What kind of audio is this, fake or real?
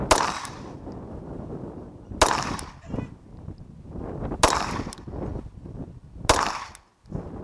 real